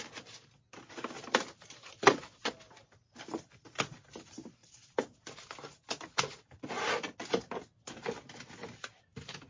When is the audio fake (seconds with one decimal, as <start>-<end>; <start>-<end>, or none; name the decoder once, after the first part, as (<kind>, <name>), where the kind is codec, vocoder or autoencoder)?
none